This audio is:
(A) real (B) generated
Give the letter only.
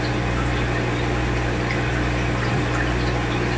A